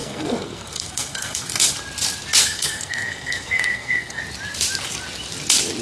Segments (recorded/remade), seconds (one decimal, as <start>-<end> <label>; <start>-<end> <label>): 0.0-1.7 remade; 1.7-2.4 recorded; 2.4-4.2 remade; 4.2-5.8 recorded